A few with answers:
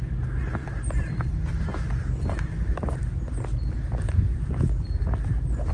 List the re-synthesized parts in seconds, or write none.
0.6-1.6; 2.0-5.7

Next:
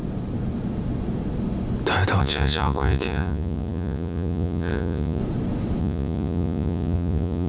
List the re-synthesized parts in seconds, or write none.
2.2-5.2; 5.8-7.5

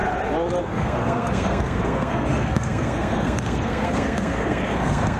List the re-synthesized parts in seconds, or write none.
0.6-5.2

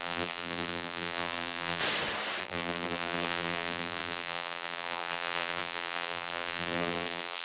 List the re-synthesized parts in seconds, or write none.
0.0-1.8; 2.4-7.4

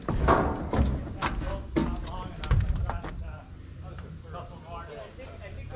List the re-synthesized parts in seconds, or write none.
none